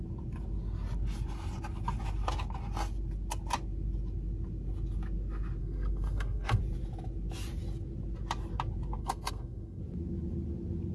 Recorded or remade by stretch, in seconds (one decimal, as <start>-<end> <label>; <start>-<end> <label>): 0.0-5.6 recorded; 5.6-6.6 remade; 6.6-9.0 recorded; 9.0-9.8 remade; 9.8-10.9 recorded